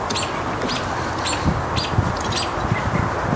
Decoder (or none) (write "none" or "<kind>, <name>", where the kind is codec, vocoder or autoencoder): none